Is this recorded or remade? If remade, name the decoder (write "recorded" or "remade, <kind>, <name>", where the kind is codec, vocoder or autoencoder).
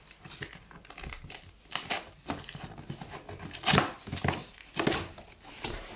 recorded